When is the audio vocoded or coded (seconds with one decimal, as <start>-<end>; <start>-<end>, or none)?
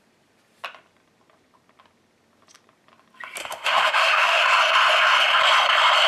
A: 3.4-4.4